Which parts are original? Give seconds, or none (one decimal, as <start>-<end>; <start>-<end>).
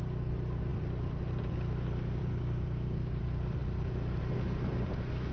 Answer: 0.0-2.2; 3.2-5.3